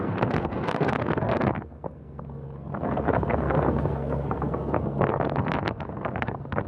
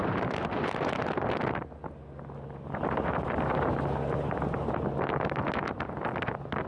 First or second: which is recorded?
second